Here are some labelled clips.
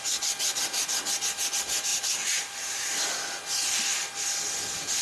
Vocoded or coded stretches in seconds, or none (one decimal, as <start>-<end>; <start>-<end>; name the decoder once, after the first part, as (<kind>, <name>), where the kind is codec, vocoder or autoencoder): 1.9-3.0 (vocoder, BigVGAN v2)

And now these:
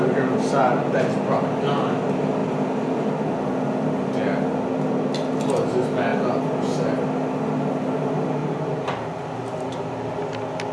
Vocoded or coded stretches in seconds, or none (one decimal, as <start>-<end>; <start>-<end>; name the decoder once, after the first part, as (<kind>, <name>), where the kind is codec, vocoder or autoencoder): 8.4-10.1 (vocoder, BigVGAN v2)

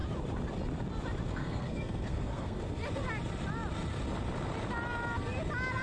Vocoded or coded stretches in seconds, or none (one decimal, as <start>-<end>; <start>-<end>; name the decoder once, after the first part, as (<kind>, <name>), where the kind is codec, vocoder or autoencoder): 1.3-2.6 (codec, SNAC)

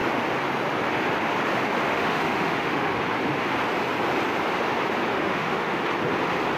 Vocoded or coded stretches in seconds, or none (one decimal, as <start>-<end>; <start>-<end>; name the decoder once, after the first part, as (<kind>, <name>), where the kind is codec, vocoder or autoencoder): 1.9-3.0 (autoencoder, DAC-VAE); 5.1-5.8

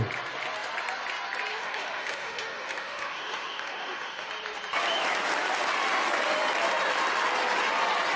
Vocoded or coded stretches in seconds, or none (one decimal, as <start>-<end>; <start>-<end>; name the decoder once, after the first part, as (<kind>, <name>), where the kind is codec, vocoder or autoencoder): 1.5-4.3 (autoencoder, DAC-VAE)

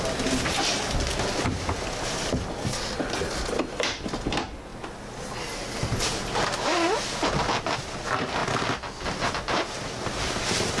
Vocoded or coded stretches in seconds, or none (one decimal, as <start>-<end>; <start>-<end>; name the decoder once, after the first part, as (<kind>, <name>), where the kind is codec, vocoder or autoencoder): none